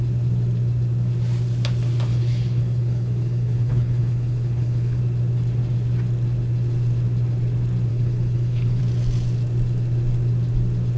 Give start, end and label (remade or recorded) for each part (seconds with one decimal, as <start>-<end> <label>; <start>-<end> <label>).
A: 0.0-2.1 recorded; 2.1-5.0 remade; 5.0-7.9 recorded; 7.9-8.8 remade; 8.8-11.0 recorded